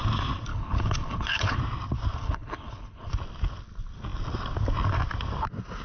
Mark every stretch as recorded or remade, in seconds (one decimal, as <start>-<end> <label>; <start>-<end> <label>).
0.0-0.5 recorded; 0.5-1.6 remade; 1.6-2.2 recorded; 2.2-3.1 remade; 3.1-5.8 recorded